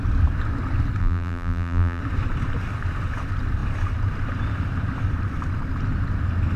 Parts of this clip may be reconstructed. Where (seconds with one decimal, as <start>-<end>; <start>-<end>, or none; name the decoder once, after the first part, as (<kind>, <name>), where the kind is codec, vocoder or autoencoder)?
1.0-2.0 (vocoder, BigVGAN v2)